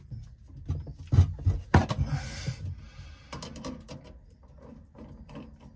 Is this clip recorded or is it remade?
recorded